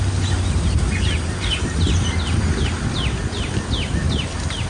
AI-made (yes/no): no